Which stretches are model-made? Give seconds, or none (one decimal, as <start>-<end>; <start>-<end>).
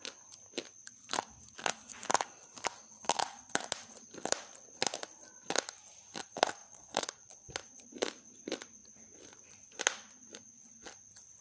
6.6-7.5